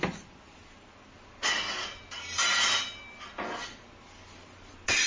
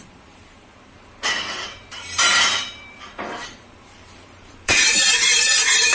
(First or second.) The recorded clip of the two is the first